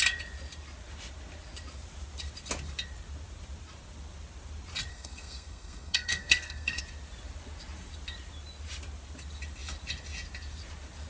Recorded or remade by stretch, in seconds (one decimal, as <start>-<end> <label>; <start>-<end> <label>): 0.0-4.9 recorded; 4.9-6.8 remade; 6.8-11.1 recorded